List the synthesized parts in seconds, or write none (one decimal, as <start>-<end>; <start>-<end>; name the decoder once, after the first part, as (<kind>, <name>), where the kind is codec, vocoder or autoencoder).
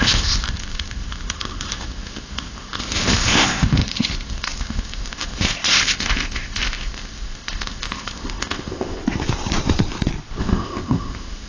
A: 0.0-9.0 (codec, ZipCodec); 10.4-11.5